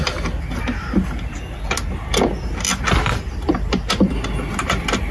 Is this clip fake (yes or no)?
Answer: no